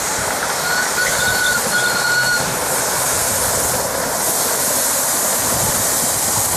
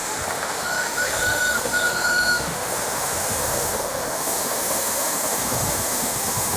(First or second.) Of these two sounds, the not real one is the second